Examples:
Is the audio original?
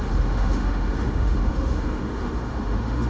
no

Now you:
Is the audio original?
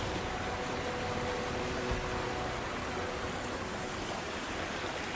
yes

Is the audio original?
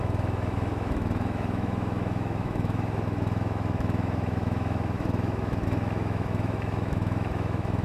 no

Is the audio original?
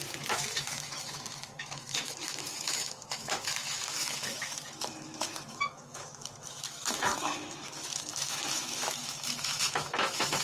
no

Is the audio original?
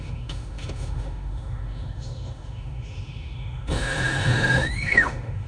no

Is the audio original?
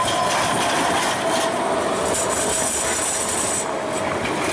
yes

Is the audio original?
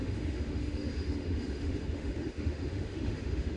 no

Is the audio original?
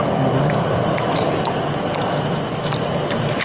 yes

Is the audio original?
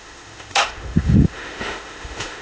no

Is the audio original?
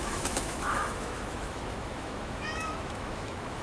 no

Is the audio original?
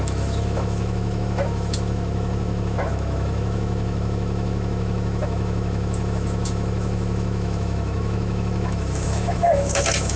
no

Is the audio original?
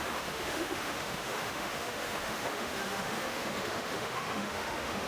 no